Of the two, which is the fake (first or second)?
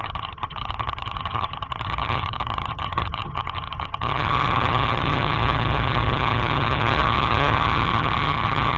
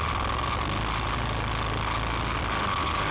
first